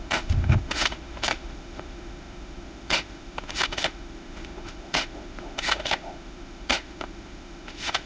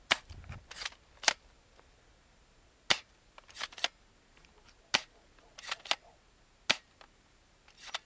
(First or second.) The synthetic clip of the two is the first